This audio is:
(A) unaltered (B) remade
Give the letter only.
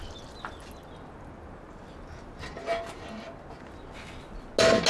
A